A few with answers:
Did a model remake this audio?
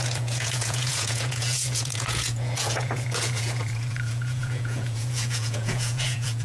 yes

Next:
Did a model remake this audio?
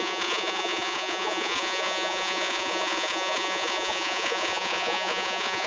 yes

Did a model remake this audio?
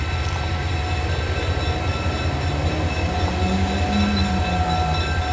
no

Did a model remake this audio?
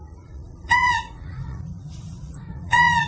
yes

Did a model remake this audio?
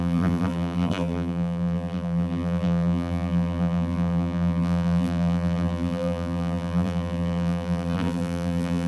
yes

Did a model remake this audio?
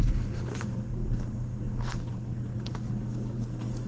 yes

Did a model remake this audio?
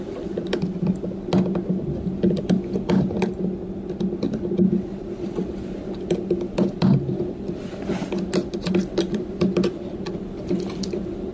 no